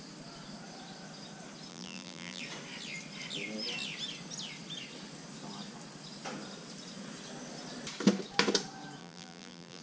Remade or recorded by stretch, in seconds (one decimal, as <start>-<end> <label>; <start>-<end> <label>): 0.0-1.7 recorded; 1.7-2.4 remade; 2.4-9.0 recorded; 9.0-9.8 remade